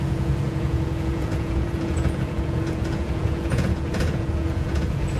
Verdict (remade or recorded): remade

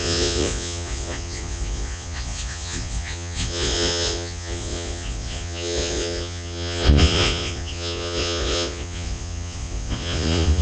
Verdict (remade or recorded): remade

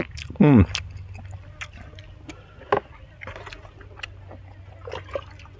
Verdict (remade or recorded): recorded